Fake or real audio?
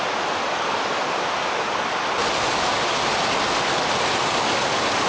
real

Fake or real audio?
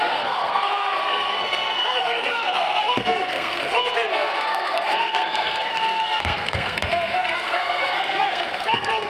fake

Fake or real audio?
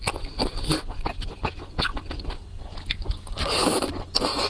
real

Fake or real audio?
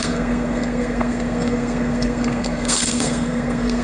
fake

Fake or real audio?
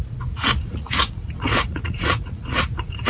fake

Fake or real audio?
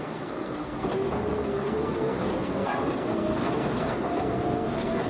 fake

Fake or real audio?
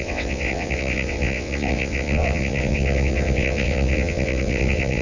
fake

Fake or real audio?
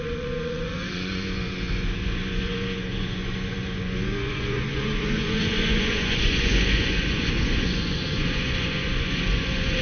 fake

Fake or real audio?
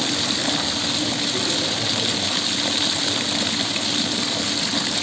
real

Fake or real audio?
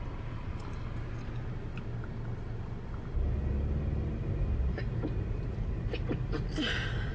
real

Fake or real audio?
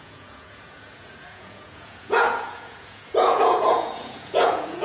fake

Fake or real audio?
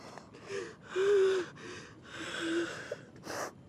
real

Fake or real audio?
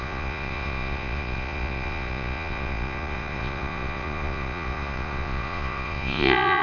fake